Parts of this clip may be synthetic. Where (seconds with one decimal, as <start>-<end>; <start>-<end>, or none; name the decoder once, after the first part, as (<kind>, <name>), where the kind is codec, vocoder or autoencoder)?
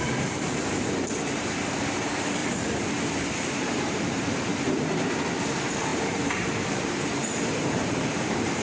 0.0-4.5 (vocoder, BigVGAN v2); 5.5-8.6